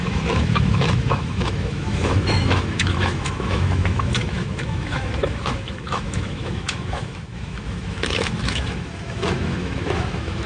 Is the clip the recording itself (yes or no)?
no